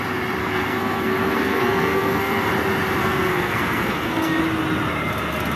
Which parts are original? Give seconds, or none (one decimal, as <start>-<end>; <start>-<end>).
0.0-0.4; 2.5-3.0; 4.4-5.6